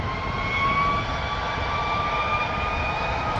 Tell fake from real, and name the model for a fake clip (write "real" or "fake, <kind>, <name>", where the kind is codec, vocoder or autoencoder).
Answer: real